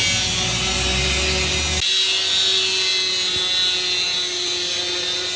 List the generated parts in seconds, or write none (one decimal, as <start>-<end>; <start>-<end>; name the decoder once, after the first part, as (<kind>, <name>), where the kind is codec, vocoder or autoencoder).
none